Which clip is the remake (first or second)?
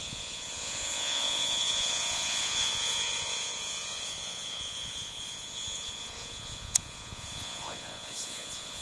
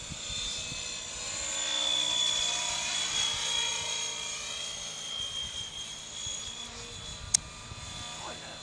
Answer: first